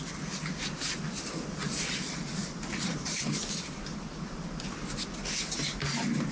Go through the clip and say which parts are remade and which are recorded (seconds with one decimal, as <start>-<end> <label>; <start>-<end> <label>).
0.0-6.3 recorded